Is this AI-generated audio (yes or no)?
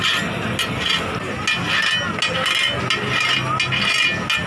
no